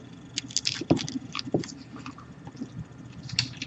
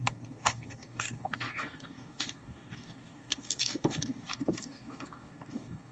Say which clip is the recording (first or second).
first